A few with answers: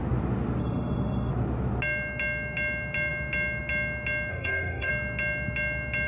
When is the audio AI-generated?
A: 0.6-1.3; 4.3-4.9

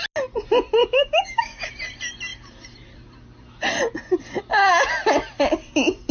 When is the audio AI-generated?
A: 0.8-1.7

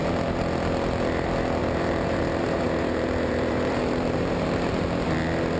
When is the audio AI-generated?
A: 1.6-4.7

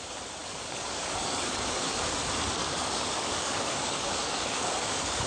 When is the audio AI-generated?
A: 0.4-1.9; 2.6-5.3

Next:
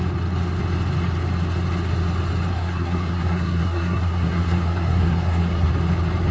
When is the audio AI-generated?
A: 2.5-5.7

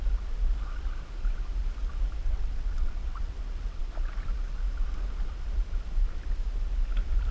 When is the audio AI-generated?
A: 2.2-3.8

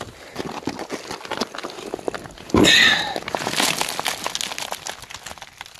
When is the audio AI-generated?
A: none